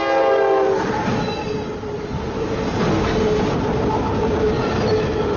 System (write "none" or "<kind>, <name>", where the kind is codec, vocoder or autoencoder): none